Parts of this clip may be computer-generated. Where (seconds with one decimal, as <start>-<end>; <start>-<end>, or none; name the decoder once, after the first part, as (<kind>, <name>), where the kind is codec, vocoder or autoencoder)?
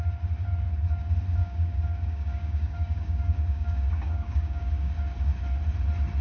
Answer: 1.4-4.9 (codec, DAC)